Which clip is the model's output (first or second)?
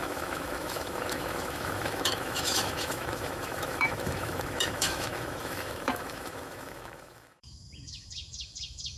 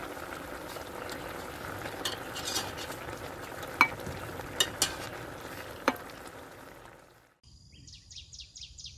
first